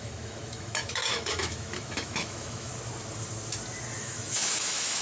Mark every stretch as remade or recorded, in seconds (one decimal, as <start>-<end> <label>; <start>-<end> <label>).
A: 0.0-2.7 remade; 2.7-4.0 recorded; 4.0-5.0 remade